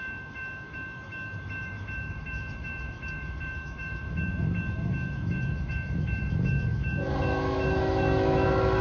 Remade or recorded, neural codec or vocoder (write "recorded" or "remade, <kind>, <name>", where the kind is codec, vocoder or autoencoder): remade, autoencoder, DAC-VAE